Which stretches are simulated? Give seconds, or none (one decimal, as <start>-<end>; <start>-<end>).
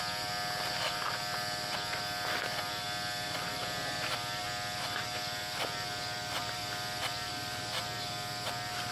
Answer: none